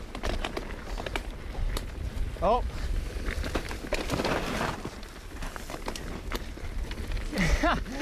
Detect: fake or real fake